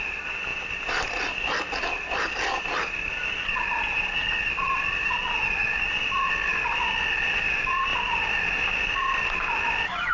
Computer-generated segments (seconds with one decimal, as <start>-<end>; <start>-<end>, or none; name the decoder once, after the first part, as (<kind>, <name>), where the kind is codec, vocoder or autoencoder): 0.5-1.3 (vocoder, BigVGAN v2); 1.8-3.1; 4.2-5.1; 7.9-10.1